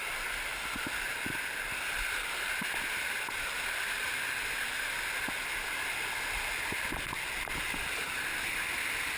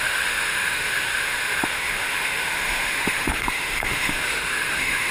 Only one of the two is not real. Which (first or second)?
second